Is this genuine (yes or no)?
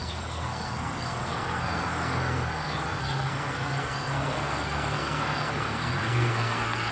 no